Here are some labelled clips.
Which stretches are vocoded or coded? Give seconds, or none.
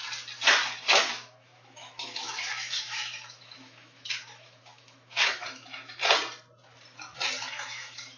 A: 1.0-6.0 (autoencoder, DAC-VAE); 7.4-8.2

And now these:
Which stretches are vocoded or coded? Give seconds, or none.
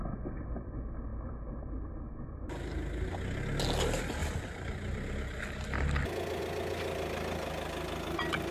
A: none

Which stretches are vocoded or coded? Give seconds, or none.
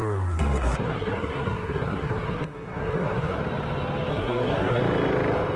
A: 0.0-3.4 (codec, SNAC); 4.1-4.8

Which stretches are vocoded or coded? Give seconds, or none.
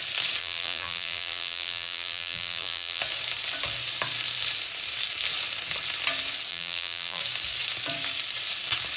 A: 0.4-3.0 (vocoder, BigVGAN v2); 6.5-7.2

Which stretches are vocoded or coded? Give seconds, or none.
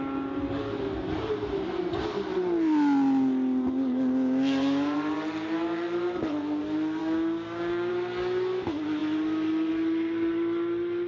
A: 7.0-7.9 (codec, DAC)